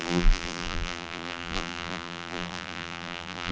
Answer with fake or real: fake